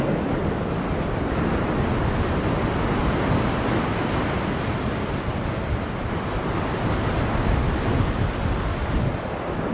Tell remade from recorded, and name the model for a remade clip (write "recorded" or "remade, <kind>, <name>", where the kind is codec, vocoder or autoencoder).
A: recorded